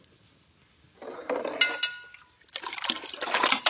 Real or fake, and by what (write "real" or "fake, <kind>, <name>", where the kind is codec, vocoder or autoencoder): real